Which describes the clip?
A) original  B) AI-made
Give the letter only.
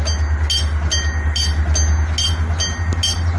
A